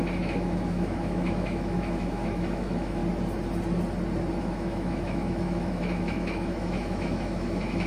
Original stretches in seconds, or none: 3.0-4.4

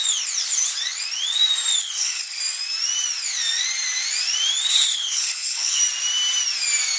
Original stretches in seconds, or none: 0.0-1.8; 2.4-4.7; 5.8-7.0

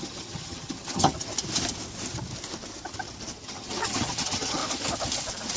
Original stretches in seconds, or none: 1.3-3.4; 4.6-5.6

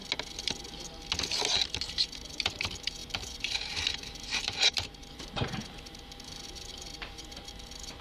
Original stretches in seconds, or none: 0.0-1.9